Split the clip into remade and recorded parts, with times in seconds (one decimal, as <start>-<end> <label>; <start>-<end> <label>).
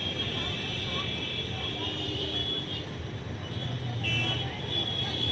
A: 0.0-2.4 remade; 2.4-5.3 recorded